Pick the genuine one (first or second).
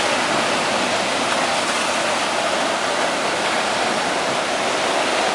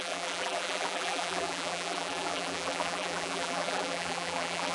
first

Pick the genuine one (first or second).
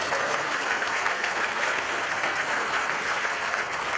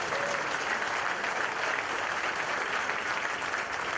second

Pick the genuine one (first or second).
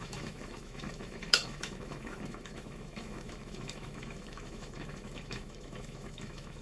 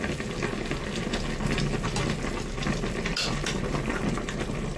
second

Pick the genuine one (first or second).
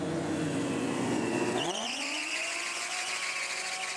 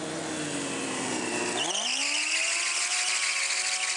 second